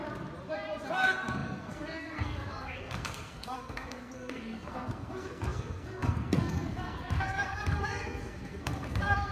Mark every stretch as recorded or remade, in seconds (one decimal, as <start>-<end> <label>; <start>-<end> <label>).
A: 0.0-0.9 recorded; 0.9-9.3 remade